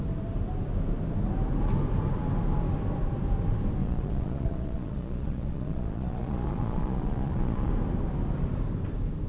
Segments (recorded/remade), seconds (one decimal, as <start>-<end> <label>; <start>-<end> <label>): 0.0-3.8 recorded; 3.8-7.7 remade; 7.7-9.3 recorded